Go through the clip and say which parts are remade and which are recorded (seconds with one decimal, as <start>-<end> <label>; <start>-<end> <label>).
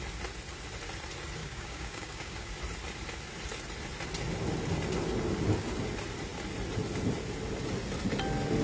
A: 0.0-1.4 recorded; 1.4-2.5 remade; 2.5-8.6 recorded